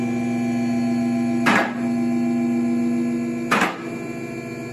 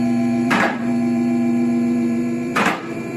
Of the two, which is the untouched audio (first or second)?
first